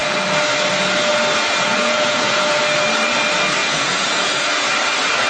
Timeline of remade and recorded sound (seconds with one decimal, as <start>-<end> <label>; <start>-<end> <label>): 0.0-1.7 recorded; 1.7-2.6 remade; 2.6-3.6 recorded; 3.6-4.7 remade; 4.7-5.3 recorded